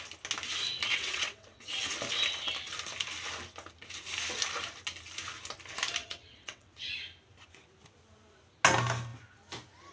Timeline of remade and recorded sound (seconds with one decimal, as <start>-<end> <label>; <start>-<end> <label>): 0.0-0.9 recorded; 0.9-1.9 remade; 1.9-6.0 recorded; 6.0-6.9 remade; 6.9-9.9 recorded